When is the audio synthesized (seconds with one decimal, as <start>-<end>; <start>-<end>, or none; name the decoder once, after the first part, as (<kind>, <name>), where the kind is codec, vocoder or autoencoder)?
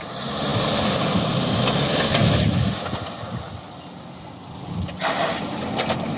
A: none